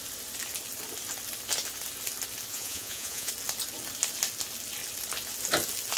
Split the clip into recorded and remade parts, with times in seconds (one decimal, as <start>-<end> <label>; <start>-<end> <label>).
0.0-2.5 recorded; 2.5-3.3 remade; 3.3-6.0 recorded